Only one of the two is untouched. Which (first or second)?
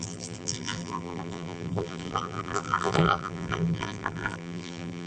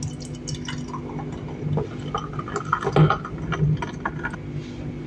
second